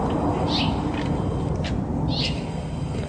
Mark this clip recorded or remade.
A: recorded